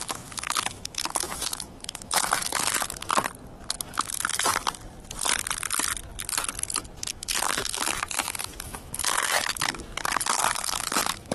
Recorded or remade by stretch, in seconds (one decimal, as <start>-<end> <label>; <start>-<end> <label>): 0.0-3.1 remade; 3.1-3.8 recorded; 3.8-4.5 remade; 4.5-7.1 recorded; 7.1-11.3 remade